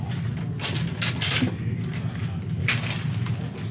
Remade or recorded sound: recorded